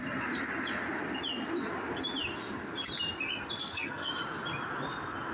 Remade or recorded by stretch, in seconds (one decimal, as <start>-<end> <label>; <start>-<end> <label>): 0.0-3.6 recorded; 3.6-4.1 remade; 4.1-5.3 recorded